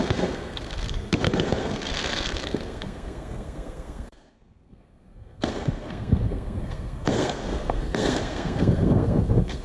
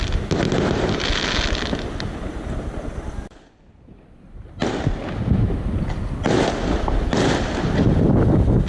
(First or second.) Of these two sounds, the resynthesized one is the first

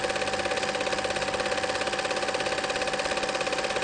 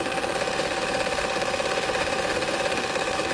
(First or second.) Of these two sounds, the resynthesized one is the second